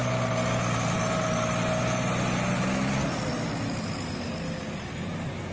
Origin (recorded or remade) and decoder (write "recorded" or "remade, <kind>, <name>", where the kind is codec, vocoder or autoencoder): recorded